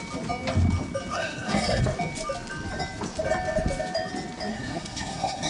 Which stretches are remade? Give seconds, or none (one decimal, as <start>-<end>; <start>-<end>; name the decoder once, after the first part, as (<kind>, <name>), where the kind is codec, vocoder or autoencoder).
1.1-1.8 (codec, SNAC); 4.5-5.5